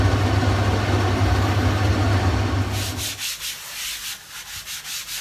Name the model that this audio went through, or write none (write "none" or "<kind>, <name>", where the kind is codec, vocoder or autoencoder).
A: none